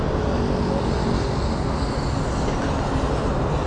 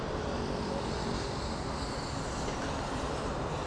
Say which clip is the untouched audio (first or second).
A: first